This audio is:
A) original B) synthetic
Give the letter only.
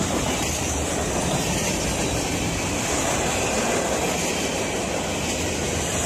A